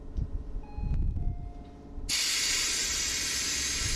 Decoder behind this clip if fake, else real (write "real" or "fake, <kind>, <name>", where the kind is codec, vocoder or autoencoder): real